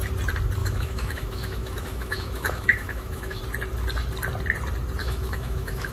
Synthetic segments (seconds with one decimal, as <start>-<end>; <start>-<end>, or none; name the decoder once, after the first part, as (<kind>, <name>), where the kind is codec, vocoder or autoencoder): 0.6-3.4 (autoencoder, DAC-VAE); 5.0-5.9